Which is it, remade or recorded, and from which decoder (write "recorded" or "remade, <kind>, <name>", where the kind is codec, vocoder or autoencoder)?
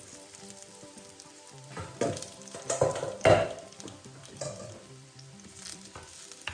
remade, vocoder, BigVGAN v2